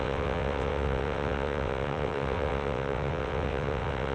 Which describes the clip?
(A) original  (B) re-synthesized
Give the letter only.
B